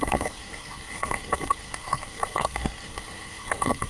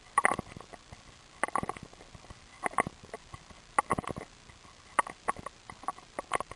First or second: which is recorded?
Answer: second